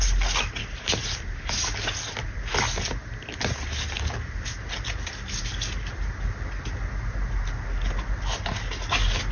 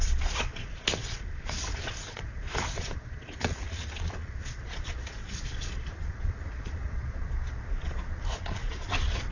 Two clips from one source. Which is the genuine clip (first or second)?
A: first